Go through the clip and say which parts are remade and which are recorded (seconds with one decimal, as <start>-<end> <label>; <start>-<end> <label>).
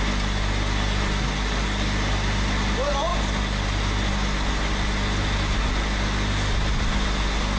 0.0-7.6 recorded